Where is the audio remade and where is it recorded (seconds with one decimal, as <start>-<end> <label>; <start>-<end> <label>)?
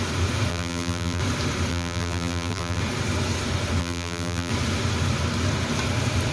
0.0-0.5 recorded; 0.5-1.2 remade; 1.2-1.7 recorded; 1.7-2.8 remade; 2.8-3.8 recorded; 3.8-4.5 remade; 4.5-6.3 recorded